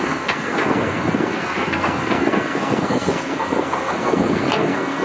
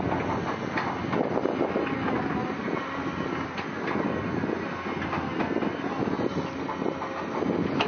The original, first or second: second